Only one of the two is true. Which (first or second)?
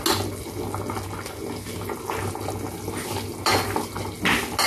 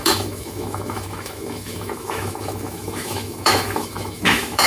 first